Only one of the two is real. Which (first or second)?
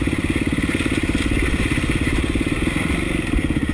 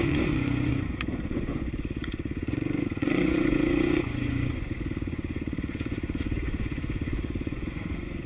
first